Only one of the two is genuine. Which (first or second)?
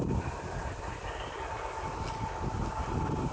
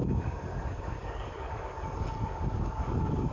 first